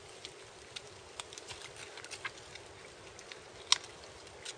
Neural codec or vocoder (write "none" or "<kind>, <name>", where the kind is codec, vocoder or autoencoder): none